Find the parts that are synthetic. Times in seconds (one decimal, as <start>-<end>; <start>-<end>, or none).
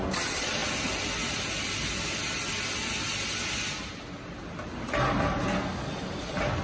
none